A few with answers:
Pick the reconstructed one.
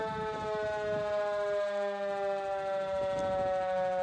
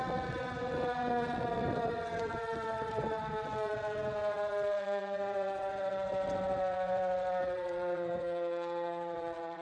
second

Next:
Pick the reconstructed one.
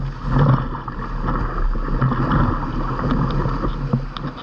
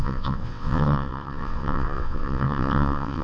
second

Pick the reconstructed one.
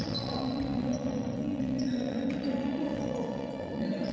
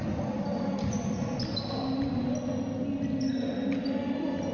first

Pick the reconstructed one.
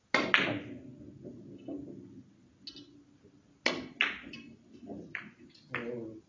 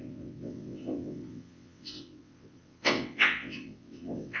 second